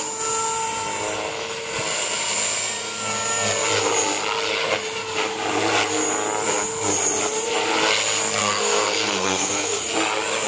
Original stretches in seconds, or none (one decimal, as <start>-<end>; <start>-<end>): 0.0-8.4; 9.8-10.5